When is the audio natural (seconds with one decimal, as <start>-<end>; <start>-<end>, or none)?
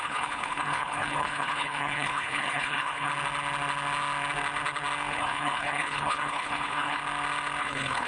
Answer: 3.1-5.1; 7.0-7.6